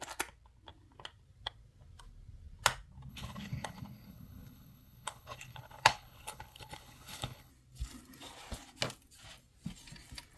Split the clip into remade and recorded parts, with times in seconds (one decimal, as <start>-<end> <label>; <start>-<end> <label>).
0.0-3.1 recorded; 3.1-7.5 remade; 7.5-10.4 recorded